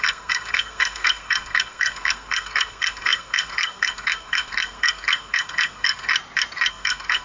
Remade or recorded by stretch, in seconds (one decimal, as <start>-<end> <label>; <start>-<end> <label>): 0.0-6.1 remade; 6.1-6.7 recorded; 6.7-7.2 remade

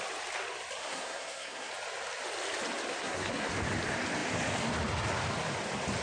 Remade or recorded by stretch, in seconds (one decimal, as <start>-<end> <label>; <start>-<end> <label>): 0.0-0.8 recorded; 0.8-1.7 remade; 1.7-2.9 recorded; 2.9-3.5 remade; 3.5-6.0 recorded

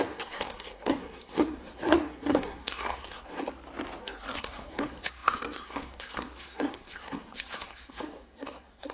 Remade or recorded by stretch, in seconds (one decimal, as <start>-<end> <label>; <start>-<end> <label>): 0.0-3.5 remade; 3.5-4.0 recorded; 4.0-8.9 remade

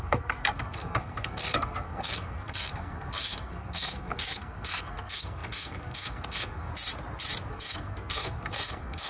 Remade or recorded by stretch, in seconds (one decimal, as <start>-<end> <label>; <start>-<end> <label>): 0.0-6.7 remade; 6.7-7.5 recorded; 7.5-9.1 remade

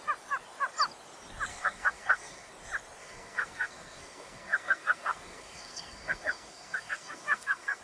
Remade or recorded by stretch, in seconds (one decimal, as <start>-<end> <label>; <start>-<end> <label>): 0.0-1.5 recorded; 1.5-2.5 remade; 2.5-3.0 recorded; 3.0-7.8 remade

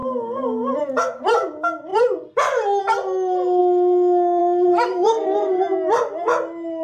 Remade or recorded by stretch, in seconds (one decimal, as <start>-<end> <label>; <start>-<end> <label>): 0.0-4.9 recorded; 4.9-5.6 remade; 5.6-6.8 recorded

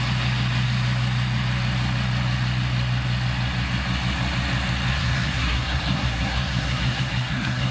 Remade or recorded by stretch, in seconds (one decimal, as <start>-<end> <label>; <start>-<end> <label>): 0.0-4.9 recorded; 4.9-7.7 remade